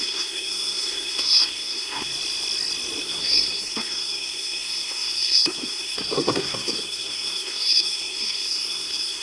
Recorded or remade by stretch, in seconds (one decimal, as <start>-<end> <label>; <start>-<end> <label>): 0.0-2.1 remade; 2.1-3.0 recorded; 3.0-9.2 remade